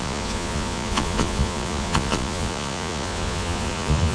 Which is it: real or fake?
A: fake